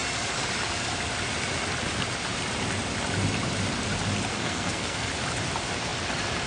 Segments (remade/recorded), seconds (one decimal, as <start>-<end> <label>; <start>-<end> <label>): 0.0-4.3 recorded; 4.3-5.1 remade; 5.1-6.5 recorded